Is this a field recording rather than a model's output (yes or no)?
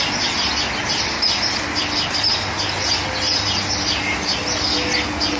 yes